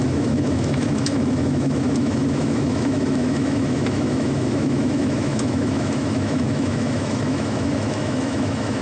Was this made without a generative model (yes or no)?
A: no